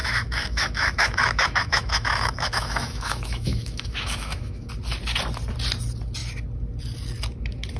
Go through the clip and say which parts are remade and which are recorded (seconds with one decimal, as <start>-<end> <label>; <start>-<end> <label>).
0.0-4.7 remade; 4.7-7.8 recorded